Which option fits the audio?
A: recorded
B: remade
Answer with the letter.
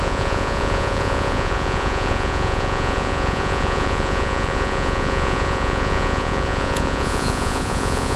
B